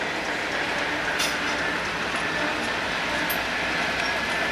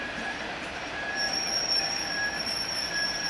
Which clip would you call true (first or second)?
first